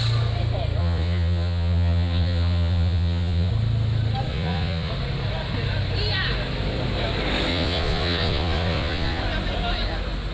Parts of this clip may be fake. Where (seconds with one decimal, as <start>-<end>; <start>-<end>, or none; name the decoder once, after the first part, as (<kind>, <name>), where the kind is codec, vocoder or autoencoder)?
0.8-3.5 (vocoder, Vocos); 4.3-4.9; 7.5-9.2